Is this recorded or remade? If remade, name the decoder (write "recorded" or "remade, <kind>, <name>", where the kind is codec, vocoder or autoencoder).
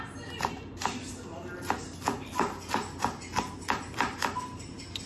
recorded